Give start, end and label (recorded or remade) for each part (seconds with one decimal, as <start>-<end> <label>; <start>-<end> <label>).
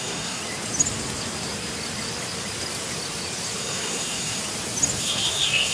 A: 0.0-0.4 remade; 0.4-3.6 recorded; 3.6-4.4 remade; 4.4-5.0 recorded; 5.0-5.7 remade